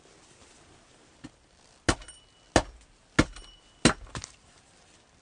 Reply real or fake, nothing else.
real